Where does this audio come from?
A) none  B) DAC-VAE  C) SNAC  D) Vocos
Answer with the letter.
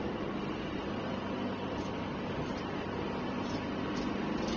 A